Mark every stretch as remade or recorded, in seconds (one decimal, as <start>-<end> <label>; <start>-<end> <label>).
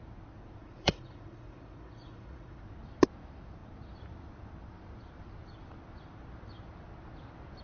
0.0-0.6 recorded; 0.6-2.6 remade; 2.6-7.6 recorded